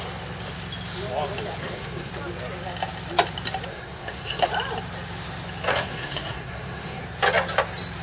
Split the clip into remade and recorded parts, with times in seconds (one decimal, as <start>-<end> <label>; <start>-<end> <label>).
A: 0.0-1.6 recorded; 1.6-2.1 remade; 2.1-3.7 recorded; 3.7-4.5 remade; 4.5-5.7 recorded; 5.7-7.0 remade; 7.0-8.0 recorded